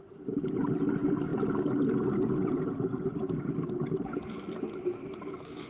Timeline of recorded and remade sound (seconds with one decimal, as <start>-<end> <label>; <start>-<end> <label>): 0.0-1.3 recorded; 1.3-4.7 remade; 4.7-5.7 recorded